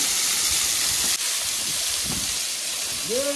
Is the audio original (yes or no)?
yes